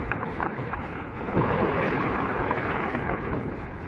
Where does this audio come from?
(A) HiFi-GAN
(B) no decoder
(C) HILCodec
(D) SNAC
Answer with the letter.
C